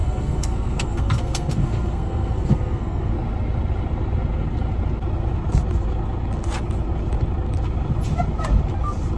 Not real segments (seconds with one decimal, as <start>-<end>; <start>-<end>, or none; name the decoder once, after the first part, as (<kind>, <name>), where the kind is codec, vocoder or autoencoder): 0.0-3.1 (codec, SNAC)

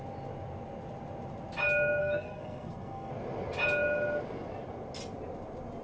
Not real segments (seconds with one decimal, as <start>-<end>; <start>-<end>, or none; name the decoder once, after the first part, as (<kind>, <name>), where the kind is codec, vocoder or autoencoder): 2.0-3.1 (codec, SNAC)

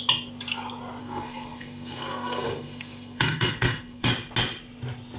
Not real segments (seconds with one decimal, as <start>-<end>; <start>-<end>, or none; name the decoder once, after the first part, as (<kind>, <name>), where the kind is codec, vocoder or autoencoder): 1.0-4.1 (codec, SNAC)

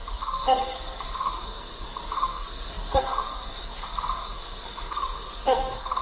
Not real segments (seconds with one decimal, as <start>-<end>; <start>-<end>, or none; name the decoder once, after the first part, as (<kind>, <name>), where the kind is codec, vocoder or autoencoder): 0.0-6.0 (codec, SNAC)

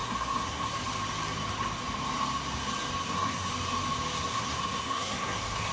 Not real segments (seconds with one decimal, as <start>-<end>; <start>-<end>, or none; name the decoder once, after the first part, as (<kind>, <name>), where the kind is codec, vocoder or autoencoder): 0.0-0.7 (codec, SNAC); 3.0-3.5; 4.2-5.7

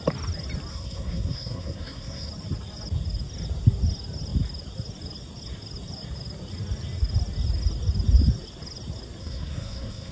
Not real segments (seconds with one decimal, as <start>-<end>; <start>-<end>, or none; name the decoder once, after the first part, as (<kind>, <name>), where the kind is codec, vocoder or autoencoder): 0.7-2.3 (codec, SNAC); 9.2-10.1

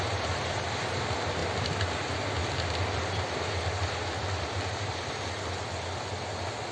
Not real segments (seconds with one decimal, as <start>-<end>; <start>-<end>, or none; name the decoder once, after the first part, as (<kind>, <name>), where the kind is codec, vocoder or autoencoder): none

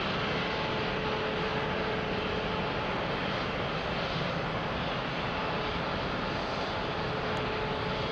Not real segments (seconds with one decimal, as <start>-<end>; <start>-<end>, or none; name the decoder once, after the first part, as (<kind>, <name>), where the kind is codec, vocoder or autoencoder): none